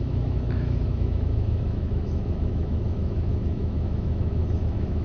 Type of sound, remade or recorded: remade